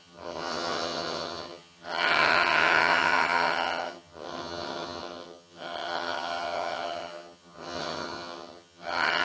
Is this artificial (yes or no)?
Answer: yes